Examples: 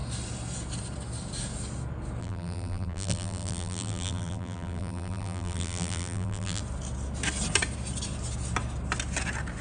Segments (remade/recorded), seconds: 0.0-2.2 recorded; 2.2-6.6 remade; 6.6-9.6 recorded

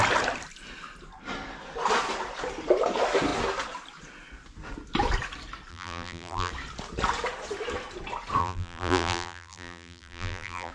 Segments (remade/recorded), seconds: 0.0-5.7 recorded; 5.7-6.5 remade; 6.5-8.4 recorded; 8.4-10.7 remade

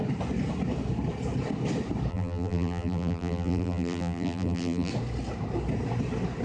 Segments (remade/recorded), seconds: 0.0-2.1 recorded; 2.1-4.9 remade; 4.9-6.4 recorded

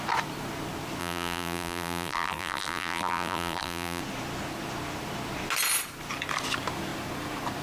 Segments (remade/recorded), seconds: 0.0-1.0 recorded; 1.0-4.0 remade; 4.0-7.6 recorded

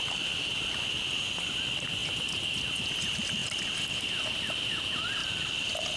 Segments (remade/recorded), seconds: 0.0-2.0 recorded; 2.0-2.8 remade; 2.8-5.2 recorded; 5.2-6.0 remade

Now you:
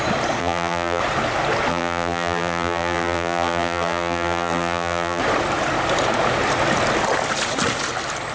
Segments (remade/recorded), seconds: 0.0-0.4 recorded; 0.4-1.0 remade; 1.0-1.7 recorded; 1.7-5.2 remade; 5.2-8.3 recorded

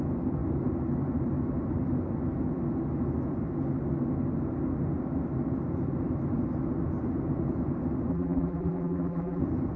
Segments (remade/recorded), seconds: 0.0-8.1 recorded; 8.1-9.4 remade; 9.4-9.8 recorded